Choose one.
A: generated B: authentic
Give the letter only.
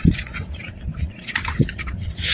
A